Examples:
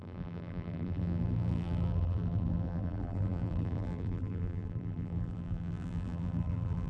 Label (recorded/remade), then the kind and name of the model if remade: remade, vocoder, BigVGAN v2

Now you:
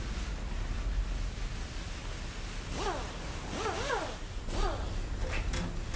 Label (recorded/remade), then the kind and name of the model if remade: recorded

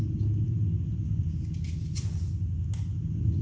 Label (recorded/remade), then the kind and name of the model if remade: recorded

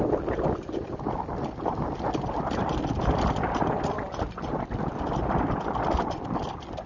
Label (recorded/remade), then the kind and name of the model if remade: recorded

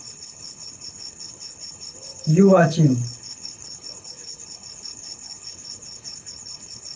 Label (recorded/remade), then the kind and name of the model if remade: remade, codec, HILCodec